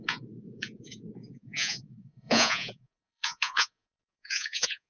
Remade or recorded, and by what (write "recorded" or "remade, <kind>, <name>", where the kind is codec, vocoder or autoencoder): remade, vocoder, Vocos